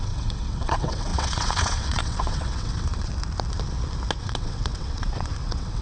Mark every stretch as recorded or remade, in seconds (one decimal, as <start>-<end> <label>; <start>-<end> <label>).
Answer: 0.0-3.1 remade; 3.1-4.2 recorded; 4.2-5.8 remade